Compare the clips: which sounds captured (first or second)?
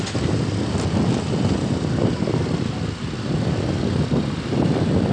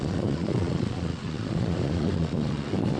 first